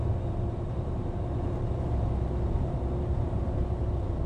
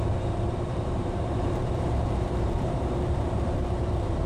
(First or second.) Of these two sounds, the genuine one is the first